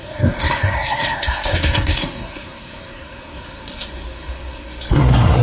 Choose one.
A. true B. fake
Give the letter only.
B